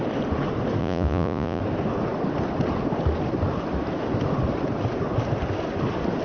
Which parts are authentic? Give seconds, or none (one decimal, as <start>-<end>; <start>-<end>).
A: 0.0-0.8; 1.6-6.2